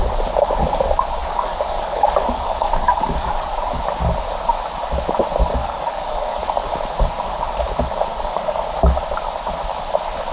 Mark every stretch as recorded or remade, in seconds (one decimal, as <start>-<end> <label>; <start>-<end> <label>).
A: 0.0-1.2 recorded; 1.2-3.8 remade; 3.8-5.6 recorded; 5.6-6.7 remade; 6.7-8.1 recorded; 8.1-8.7 remade; 8.7-10.3 recorded